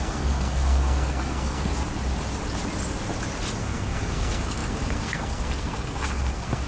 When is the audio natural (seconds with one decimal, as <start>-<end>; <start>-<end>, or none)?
1.7-3.6